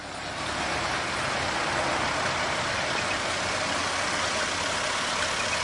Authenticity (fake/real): real